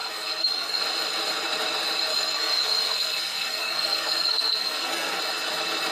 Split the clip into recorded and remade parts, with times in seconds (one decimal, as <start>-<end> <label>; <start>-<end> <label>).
0.0-0.8 remade; 0.8-2.1 recorded; 2.1-5.2 remade; 5.2-5.9 recorded